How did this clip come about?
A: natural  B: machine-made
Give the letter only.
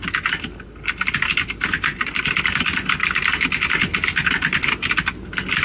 A